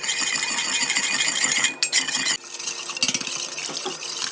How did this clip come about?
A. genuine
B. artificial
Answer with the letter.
A